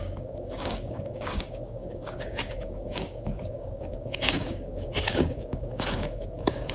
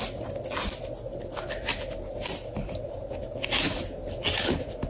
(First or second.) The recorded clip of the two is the second